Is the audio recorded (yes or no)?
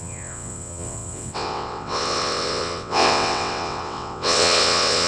no